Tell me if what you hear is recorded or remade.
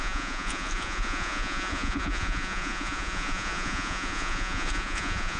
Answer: remade